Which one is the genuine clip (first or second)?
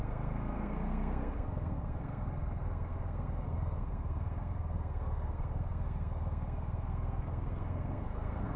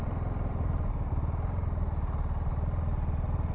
second